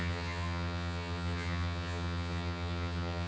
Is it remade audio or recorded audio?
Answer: remade